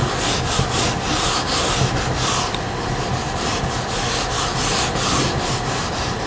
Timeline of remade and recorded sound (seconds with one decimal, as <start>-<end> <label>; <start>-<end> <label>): 0.0-6.3 recorded